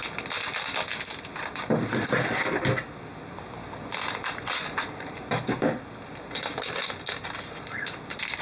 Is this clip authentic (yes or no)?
yes